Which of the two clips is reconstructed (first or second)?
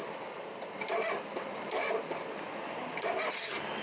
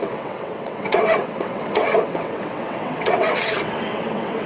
second